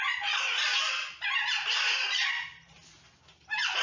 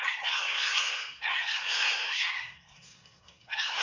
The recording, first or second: first